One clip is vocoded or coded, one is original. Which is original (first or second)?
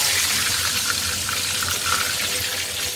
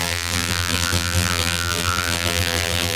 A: first